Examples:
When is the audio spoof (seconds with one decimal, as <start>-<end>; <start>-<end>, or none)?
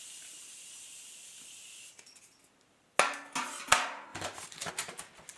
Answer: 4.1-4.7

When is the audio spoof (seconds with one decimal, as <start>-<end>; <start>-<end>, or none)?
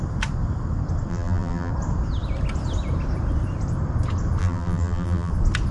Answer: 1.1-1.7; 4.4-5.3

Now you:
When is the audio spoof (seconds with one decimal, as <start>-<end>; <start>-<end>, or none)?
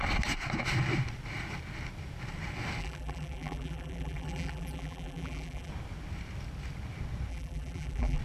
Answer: 2.8-5.7; 7.3-8.2